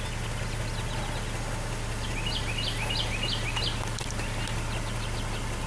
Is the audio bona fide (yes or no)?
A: yes